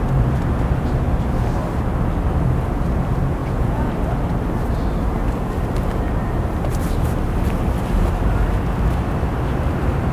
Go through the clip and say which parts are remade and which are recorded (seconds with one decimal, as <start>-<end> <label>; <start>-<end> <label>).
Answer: 0.0-3.4 recorded; 3.4-3.9 remade; 3.9-10.1 recorded